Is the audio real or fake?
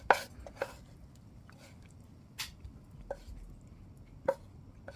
real